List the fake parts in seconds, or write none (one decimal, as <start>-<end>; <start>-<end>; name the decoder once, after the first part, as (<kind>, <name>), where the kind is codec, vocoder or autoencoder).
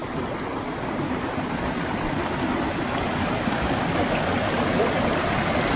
none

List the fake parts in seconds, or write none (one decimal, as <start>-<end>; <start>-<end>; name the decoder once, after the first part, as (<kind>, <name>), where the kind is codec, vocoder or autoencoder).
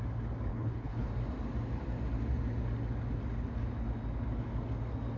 0.5-1.1 (codec, HILCodec)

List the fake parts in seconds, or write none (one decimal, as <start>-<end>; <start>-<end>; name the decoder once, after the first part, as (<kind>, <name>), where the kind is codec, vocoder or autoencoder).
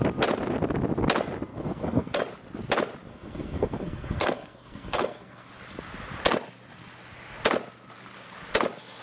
1.5-2.2 (codec, SNAC); 3.1-5.5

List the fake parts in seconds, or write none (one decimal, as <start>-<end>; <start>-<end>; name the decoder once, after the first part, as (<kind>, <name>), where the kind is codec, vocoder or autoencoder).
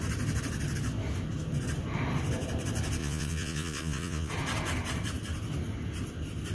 3.0-4.3 (vocoder, Vocos)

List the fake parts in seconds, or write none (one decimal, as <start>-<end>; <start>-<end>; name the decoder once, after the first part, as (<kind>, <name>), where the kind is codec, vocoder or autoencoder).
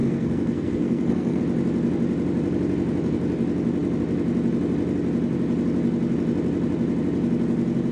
0.0-1.4 (codec, SNAC)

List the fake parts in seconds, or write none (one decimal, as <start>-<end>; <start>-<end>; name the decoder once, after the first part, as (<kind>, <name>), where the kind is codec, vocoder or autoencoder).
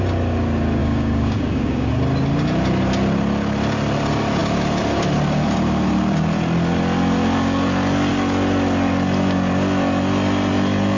0.8-1.9 (codec, DAC)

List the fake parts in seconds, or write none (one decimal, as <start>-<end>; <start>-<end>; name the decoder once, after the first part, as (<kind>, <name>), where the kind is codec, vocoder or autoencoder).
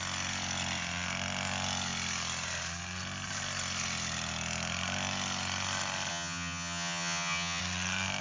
6.1-7.6 (vocoder, HiFi-GAN)